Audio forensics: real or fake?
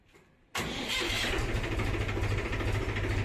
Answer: real